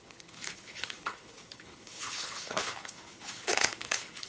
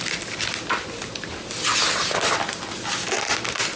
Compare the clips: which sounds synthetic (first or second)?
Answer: first